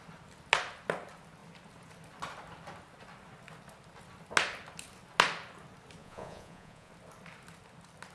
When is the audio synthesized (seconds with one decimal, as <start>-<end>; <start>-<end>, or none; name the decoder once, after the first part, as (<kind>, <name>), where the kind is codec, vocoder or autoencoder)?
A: 6.0-6.9 (vocoder, Vocos)